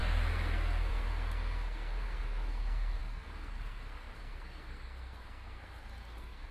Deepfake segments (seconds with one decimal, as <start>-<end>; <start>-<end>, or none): 0.0-6.5